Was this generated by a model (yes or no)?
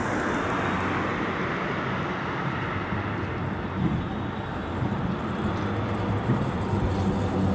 no